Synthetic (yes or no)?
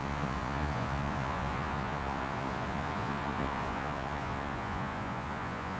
yes